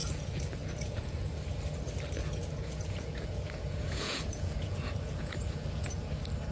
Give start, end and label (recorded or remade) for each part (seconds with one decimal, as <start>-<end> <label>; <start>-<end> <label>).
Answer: 0.0-1.4 remade; 1.4-2.2 recorded; 2.2-6.1 remade; 6.1-6.5 recorded